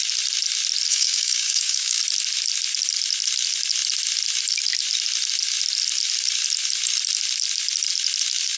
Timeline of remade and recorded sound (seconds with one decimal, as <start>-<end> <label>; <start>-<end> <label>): 0.0-0.9 recorded; 0.9-2.0 remade; 2.0-8.6 recorded